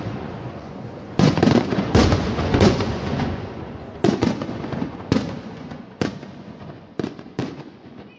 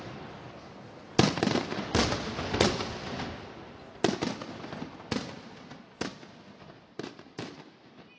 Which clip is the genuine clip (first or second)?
second